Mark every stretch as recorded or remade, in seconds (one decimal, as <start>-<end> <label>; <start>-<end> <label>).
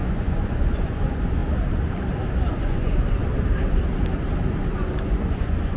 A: 0.0-1.4 remade; 1.4-2.5 recorded; 2.5-3.2 remade; 3.2-4.6 recorded; 4.6-5.8 remade